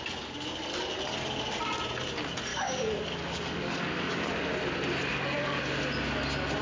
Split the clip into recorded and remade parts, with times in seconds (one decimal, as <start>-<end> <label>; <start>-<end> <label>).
0.0-2.5 recorded; 2.5-4.3 remade; 4.3-5.1 recorded; 5.1-5.6 remade; 5.6-6.6 recorded